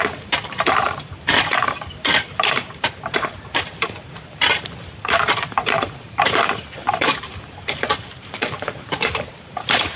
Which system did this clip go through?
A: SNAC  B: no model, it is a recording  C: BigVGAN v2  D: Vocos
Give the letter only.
C